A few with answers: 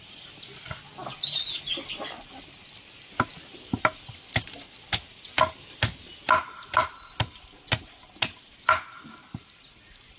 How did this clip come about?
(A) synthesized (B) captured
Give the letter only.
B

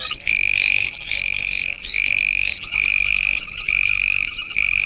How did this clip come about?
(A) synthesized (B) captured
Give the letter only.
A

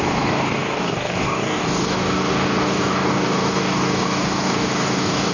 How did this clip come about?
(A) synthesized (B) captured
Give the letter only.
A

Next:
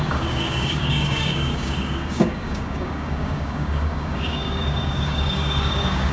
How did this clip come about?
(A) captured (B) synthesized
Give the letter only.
B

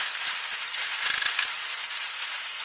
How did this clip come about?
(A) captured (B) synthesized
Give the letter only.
A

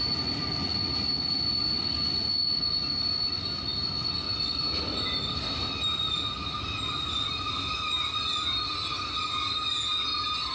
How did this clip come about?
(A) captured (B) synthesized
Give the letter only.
A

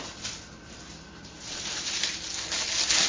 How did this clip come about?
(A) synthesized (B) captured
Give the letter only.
B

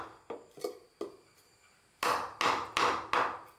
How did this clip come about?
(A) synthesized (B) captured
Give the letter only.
B